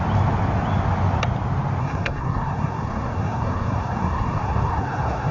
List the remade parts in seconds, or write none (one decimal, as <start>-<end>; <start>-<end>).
1.8-5.3